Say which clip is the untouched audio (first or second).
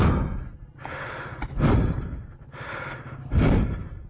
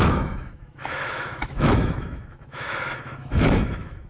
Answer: first